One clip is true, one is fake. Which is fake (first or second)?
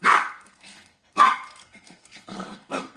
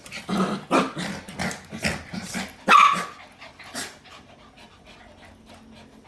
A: first